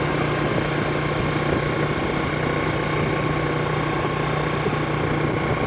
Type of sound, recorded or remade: recorded